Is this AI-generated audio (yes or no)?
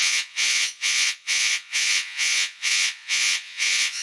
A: yes